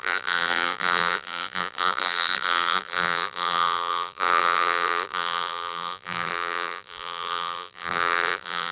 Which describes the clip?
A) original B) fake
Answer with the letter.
B